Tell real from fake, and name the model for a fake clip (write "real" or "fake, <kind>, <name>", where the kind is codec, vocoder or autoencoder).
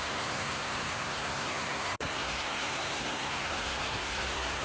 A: fake, codec, SNAC